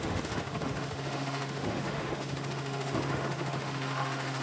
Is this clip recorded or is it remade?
remade